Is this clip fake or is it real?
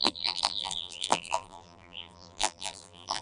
fake